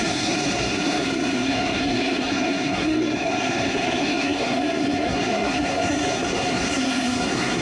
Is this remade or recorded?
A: remade